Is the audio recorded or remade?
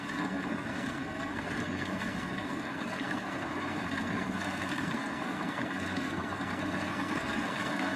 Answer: remade